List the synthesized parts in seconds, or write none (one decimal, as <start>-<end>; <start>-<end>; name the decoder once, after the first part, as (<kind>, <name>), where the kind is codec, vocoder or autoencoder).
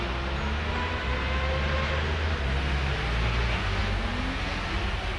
none